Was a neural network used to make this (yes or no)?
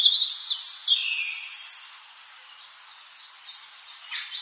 no